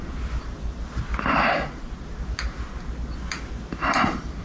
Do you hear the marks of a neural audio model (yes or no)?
no